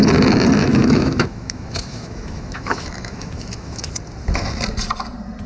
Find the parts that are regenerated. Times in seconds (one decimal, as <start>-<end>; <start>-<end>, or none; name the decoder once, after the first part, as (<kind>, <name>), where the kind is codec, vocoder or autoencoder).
0.6-3.9 (autoencoder, DAC-VAE)

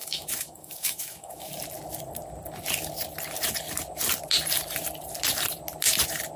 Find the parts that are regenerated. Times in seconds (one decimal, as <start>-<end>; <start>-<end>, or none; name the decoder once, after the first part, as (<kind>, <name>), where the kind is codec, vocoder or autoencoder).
0.0-1.5 (autoencoder, DAC-VAE)

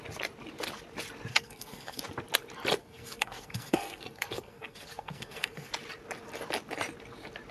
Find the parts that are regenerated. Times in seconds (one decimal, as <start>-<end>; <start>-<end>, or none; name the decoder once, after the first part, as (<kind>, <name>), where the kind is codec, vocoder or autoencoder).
1.3-2.0 (codec, SNAC); 2.8-5.7

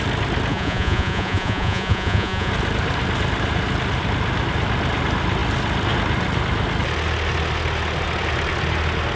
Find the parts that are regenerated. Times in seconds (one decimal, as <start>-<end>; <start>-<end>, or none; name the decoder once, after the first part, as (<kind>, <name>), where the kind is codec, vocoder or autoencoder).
0.5-2.5 (vocoder, Vocos)

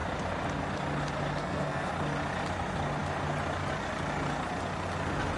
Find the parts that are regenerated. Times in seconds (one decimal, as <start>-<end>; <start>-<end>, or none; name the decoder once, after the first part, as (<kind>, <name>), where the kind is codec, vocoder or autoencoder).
1.4-1.9 (codec, SNAC)

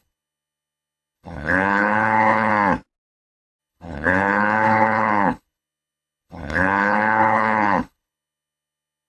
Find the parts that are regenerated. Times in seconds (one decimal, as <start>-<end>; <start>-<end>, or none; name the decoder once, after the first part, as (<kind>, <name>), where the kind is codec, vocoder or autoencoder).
0.0-2.5 (codec, HILCodec); 3.6-9.1

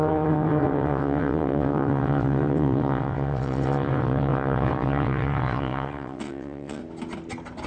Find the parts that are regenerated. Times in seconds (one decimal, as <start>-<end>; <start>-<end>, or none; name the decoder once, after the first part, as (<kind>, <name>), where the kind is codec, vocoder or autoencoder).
0.0-6.8 (vocoder, WaveNeXt)